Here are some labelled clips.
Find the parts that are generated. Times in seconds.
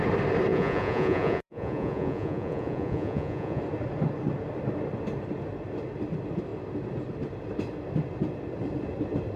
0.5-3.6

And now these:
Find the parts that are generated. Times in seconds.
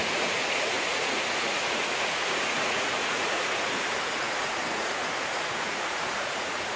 0.0-6.8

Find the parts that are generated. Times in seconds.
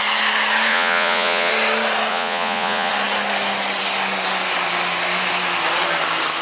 0.7-1.5; 2.1-2.9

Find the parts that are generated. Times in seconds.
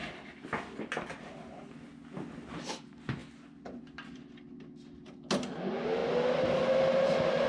none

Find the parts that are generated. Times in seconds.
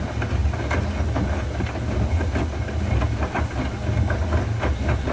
none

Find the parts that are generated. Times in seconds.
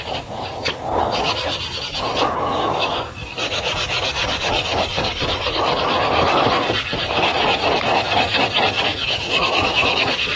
0.0-10.4